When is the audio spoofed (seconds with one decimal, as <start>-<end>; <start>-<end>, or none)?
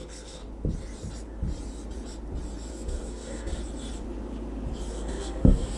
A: 0.0-0.4; 2.7-3.6; 4.9-5.8